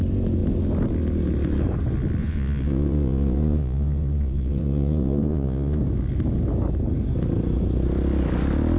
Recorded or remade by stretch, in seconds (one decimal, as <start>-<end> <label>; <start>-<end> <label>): 0.0-2.2 recorded; 2.2-5.8 remade; 5.8-8.8 recorded